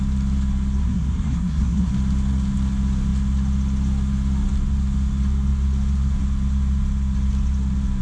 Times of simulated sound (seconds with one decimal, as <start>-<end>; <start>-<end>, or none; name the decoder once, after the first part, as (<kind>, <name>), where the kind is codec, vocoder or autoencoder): 0.8-1.9 (codec, SNAC)